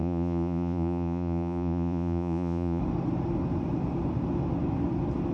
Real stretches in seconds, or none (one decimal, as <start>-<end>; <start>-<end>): 2.8-5.3